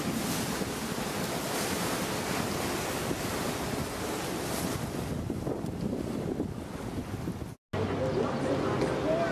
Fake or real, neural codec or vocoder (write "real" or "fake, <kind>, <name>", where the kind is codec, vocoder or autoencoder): real